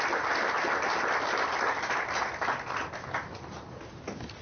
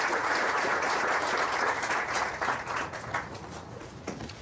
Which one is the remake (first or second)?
second